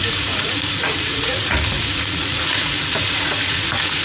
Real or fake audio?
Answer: fake